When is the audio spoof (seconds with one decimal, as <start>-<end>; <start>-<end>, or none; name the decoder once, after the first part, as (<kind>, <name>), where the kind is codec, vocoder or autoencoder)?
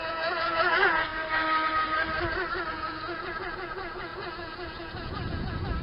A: 0.0-1.1 (vocoder, Vocos); 2.7-5.8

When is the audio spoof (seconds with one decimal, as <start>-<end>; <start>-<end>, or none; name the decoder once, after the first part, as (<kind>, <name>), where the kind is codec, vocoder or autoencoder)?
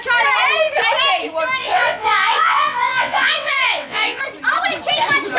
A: 1.6-4.2 (vocoder, WaveNeXt)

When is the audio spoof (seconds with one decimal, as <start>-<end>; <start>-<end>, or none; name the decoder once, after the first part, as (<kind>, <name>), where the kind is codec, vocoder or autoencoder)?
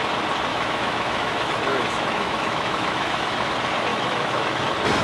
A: 0.5-3.5 (autoencoder, DAC-VAE); 3.9-4.6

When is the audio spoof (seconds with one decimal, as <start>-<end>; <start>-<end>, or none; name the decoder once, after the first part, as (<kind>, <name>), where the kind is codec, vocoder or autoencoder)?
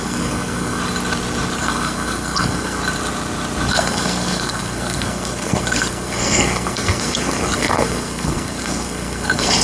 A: 0.0-0.8 (codec, SNAC); 1.6-2.8; 3.7-9.6